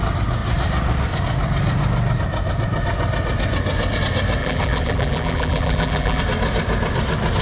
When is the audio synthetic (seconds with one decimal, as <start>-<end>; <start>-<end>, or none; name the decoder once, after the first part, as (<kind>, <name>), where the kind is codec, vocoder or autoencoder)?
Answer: 4.4-6.2 (vocoder, BigVGAN v2)